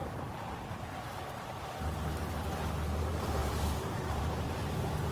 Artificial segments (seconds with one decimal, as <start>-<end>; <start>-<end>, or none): 3.0-5.1

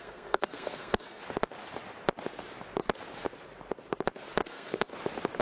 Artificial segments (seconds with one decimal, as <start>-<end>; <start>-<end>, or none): 0.0-1.2; 4.4-4.9

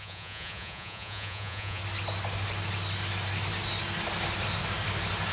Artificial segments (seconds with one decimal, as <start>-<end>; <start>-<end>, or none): 0.0-1.8

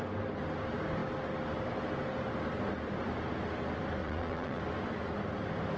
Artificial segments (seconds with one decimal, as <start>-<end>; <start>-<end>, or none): 4.0-4.6

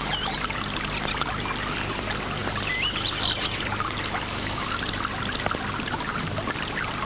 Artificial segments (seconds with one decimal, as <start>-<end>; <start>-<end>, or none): none

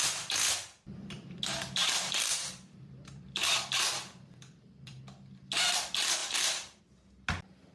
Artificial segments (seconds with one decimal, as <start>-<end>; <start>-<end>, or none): 1.8-5.0; 6.2-6.8